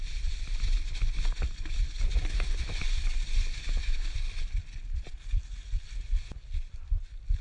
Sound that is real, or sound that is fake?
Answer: real